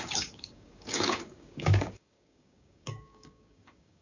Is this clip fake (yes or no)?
yes